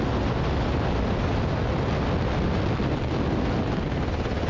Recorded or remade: recorded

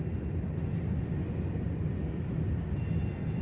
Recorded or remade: recorded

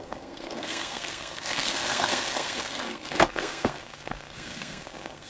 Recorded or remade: remade